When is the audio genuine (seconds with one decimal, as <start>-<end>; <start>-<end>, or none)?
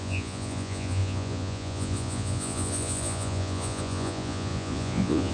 none